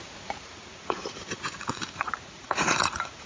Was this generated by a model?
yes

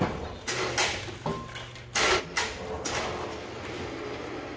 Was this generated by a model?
no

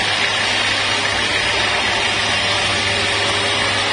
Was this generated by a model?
no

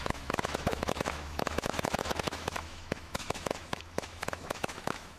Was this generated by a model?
yes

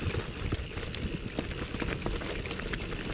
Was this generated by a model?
no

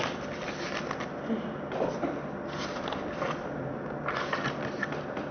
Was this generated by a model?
no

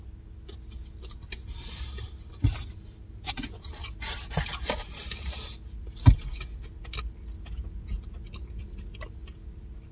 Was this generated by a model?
no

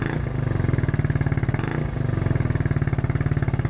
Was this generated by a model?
no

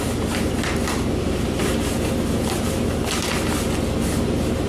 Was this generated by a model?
no